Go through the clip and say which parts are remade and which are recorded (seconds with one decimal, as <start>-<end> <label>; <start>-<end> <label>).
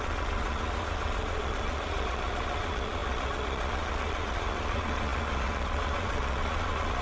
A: 0.0-7.0 remade